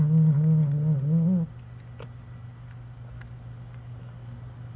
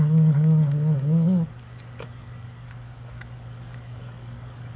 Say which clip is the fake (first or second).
second